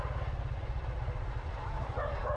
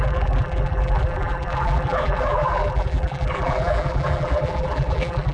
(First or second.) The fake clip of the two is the second